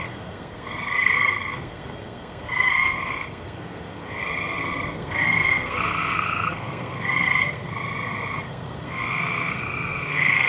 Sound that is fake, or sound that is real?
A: fake